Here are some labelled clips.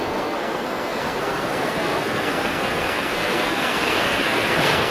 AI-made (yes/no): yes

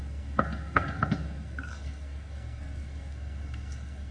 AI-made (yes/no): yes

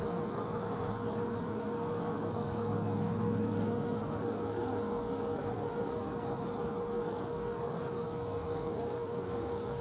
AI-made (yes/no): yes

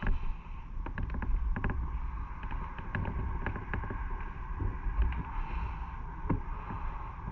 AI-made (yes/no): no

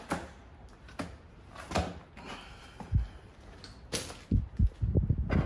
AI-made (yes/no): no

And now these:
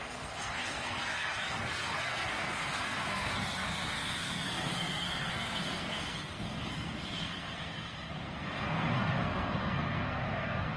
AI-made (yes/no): yes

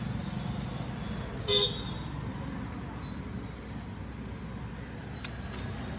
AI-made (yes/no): no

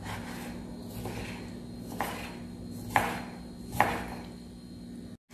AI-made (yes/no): no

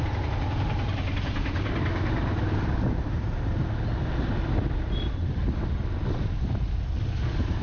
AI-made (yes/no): no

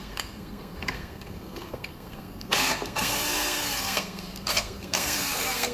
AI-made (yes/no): yes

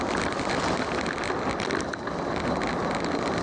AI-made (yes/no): no